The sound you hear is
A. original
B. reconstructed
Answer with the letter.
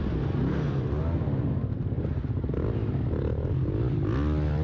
A